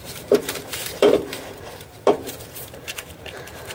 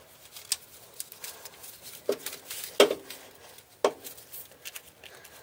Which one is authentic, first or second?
second